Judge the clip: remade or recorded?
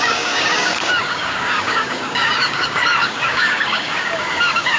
remade